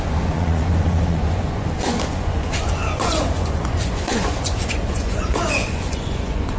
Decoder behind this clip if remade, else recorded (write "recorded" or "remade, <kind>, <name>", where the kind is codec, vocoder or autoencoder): remade, vocoder, Vocos